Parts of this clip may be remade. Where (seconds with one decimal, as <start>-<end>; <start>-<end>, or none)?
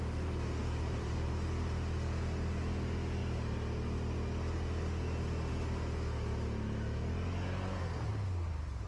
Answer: 0.6-1.3; 8.1-8.9